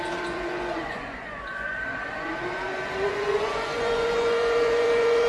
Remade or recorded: remade